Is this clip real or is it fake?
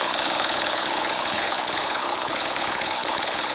fake